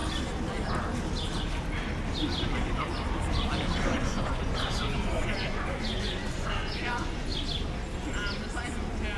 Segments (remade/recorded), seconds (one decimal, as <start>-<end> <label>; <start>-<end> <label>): 0.0-3.9 recorded; 3.9-7.3 remade; 7.3-9.2 recorded